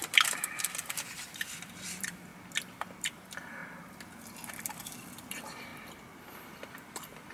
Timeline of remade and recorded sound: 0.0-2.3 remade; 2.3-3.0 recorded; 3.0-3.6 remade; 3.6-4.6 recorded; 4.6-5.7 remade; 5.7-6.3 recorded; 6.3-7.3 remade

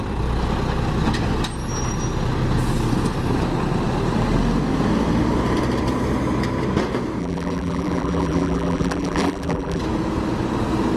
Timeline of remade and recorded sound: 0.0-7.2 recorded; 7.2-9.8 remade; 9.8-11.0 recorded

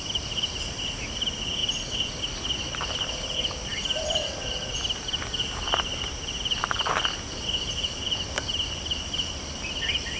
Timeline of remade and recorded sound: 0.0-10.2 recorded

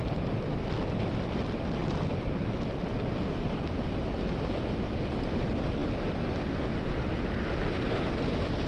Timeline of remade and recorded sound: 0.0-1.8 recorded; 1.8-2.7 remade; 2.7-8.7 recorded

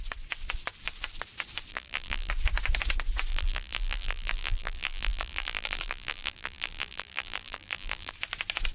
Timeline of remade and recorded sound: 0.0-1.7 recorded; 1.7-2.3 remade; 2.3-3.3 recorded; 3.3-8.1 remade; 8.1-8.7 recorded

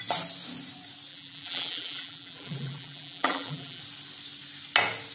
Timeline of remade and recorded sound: 0.0-1.1 recorded; 1.1-3.8 remade; 3.8-5.1 recorded